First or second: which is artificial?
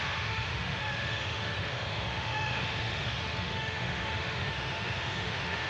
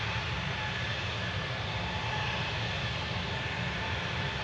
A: first